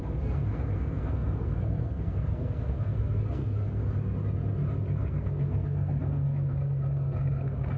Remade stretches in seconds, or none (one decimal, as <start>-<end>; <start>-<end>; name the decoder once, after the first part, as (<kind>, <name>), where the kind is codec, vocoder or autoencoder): 0.0-3.8 (codec, SNAC); 5.0-7.8